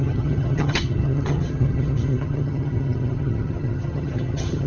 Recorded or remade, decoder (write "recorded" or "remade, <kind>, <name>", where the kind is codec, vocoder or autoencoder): remade, vocoder, HiFi-GAN